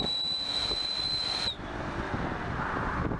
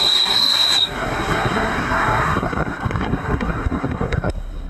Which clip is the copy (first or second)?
second